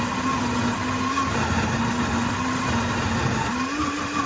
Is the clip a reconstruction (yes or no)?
no